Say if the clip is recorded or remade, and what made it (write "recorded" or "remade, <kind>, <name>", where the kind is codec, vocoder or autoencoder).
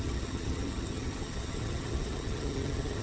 remade, vocoder, HiFi-GAN